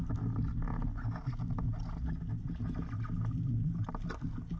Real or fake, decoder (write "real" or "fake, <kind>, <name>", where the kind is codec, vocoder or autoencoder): real